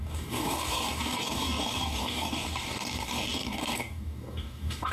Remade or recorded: remade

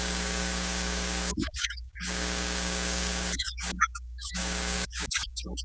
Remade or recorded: remade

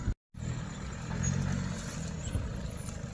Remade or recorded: recorded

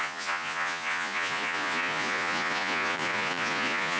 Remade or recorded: remade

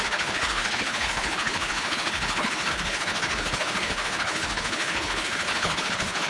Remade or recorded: remade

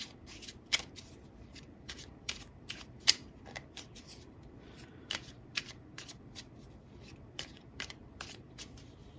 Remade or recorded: remade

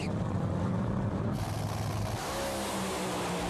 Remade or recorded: recorded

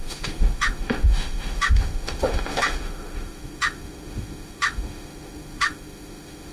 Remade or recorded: remade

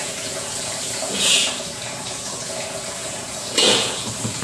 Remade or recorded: remade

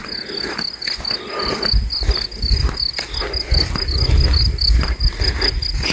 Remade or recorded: recorded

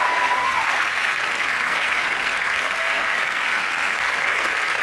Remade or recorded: remade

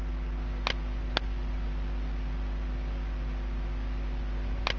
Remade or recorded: recorded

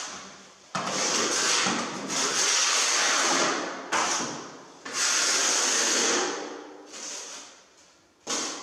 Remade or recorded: recorded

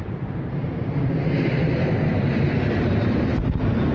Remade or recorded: remade